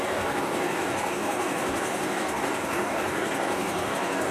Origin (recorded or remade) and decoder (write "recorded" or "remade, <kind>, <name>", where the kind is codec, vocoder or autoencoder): remade, codec, DAC